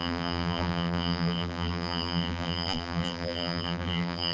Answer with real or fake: fake